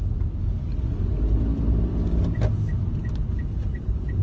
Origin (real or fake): real